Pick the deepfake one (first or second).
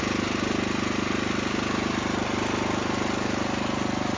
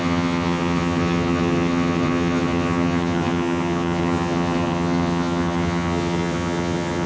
second